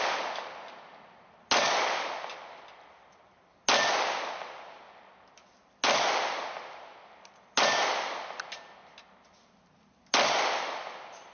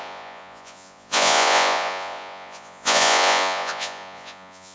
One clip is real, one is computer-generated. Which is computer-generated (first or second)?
second